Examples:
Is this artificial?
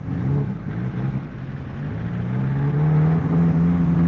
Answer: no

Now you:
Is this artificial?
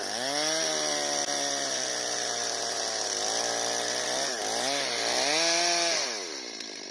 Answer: no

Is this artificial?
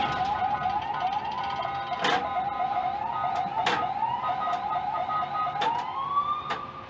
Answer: no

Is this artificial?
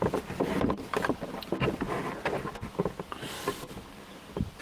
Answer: no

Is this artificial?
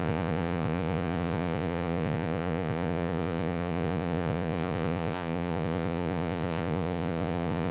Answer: yes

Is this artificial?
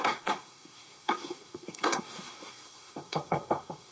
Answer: yes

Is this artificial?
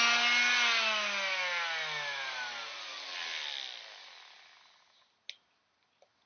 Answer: no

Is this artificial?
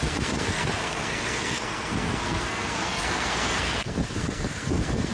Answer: yes